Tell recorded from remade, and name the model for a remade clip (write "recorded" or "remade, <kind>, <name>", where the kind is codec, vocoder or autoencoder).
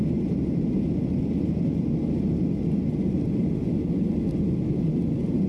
recorded